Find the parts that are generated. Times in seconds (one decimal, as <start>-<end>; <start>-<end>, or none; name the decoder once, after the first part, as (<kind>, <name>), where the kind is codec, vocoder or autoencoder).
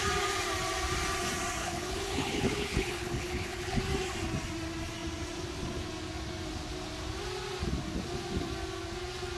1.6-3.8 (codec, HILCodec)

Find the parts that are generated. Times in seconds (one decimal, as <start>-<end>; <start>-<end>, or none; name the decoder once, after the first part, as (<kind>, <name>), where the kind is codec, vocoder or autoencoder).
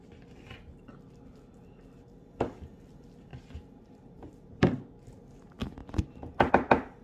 3.3-4.6 (vocoder, BigVGAN v2)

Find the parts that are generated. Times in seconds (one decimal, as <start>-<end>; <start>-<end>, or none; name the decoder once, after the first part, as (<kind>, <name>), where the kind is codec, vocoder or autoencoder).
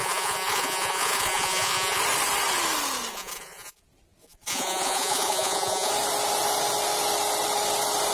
0.0-2.0 (vocoder, Vocos); 3.1-3.8; 4.2-5.9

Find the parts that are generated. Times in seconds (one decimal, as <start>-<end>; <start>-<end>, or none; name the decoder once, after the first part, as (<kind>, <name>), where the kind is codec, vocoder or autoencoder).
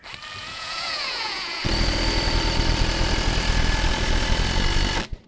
0.4-1.6 (vocoder, Vocos)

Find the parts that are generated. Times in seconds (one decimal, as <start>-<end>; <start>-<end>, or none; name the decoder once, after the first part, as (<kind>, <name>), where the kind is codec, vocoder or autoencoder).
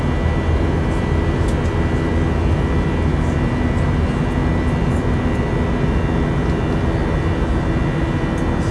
none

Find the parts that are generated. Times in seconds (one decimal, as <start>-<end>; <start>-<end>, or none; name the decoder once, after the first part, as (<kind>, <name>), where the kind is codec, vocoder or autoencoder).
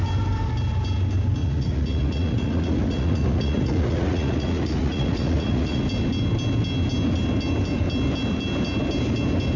1.4-5.8 (vocoder, Vocos)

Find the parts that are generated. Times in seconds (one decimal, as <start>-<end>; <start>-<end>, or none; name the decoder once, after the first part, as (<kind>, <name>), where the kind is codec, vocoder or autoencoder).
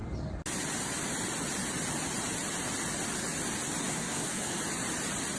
3.8-4.6 (codec, SNAC)